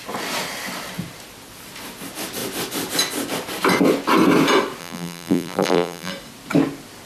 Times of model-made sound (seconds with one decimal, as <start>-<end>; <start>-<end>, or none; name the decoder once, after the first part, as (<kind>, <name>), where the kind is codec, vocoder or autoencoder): 4.8-6.1 (vocoder, BigVGAN v2)